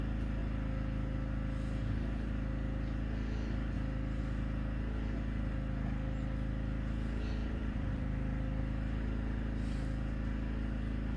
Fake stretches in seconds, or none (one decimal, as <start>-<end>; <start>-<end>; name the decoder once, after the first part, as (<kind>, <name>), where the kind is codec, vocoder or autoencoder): 7.4-8.6 (vocoder, BigVGAN v2)